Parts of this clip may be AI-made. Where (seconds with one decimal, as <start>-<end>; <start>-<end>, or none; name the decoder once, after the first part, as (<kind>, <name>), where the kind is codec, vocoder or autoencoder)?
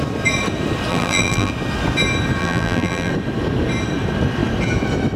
0.9-1.5 (vocoder, BigVGAN v2); 2.4-3.1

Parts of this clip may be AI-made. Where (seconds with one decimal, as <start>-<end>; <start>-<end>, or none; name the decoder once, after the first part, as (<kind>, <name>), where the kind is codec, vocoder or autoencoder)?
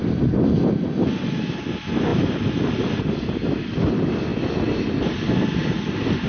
none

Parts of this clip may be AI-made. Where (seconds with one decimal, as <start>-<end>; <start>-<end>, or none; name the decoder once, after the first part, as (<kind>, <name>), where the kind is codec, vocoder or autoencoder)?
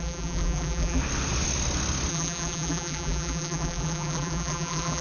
0.0-1.0 (vocoder, BigVGAN v2); 2.1-5.0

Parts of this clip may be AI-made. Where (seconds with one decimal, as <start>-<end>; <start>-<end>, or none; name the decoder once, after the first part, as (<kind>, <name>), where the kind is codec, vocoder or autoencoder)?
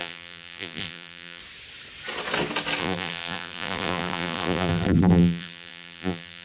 0.0-1.4 (vocoder, BigVGAN v2); 2.8-6.4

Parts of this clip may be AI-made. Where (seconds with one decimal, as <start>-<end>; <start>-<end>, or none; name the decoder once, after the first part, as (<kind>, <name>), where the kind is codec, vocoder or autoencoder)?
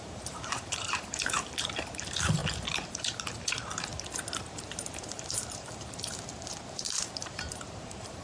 0.0-2.4 (vocoder, BigVGAN v2); 2.9-3.9; 4.5-8.2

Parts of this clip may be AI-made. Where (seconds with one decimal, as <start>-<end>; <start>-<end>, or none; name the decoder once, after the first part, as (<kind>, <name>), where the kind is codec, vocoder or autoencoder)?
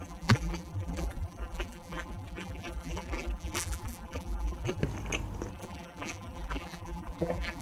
0.0-4.8 (vocoder, BigVGAN v2); 5.5-7.6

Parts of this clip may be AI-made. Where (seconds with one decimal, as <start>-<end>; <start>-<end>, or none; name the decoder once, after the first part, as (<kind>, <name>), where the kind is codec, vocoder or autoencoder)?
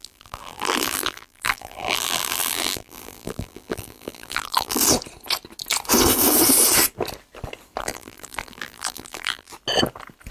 0.0-4.8 (vocoder, BigVGAN v2); 7.8-9.5